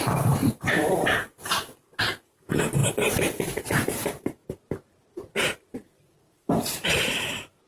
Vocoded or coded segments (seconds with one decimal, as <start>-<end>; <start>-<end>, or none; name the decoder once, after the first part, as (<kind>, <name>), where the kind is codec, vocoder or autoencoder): 0.0-7.7 (vocoder, BigVGAN v2)